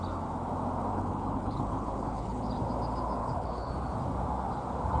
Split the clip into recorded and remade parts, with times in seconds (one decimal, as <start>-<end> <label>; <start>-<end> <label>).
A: 0.0-0.9 recorded; 0.9-2.5 remade; 2.5-3.2 recorded; 3.2-3.7 remade; 3.7-5.0 recorded